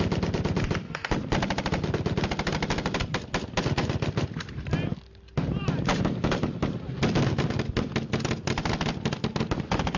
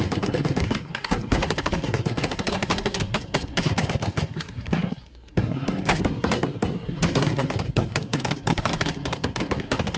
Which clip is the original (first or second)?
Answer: first